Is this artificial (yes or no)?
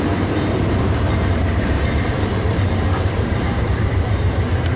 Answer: yes